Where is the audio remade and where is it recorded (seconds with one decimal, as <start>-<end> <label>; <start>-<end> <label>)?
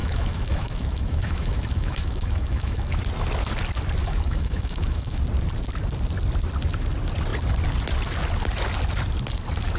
0.0-3.0 remade; 3.0-4.0 recorded; 4.0-5.2 remade; 5.2-9.8 recorded